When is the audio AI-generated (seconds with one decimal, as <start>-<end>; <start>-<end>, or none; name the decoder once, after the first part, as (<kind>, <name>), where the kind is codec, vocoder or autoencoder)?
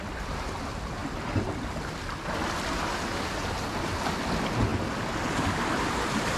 none